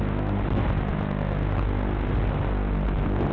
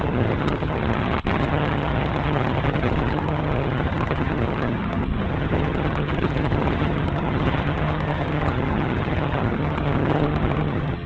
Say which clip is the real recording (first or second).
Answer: first